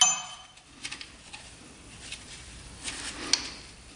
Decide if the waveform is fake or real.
real